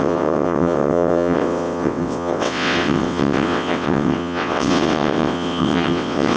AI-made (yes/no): yes